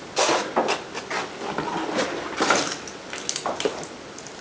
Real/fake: real